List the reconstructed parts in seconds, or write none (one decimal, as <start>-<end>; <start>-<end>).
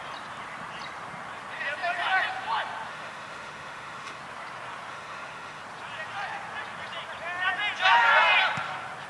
2.9-4.2; 4.9-5.6